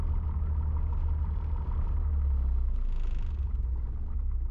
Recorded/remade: recorded